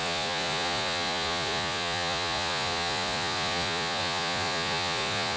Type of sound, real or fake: fake